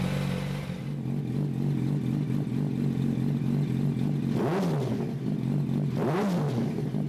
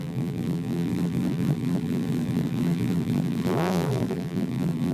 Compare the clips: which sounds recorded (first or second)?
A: first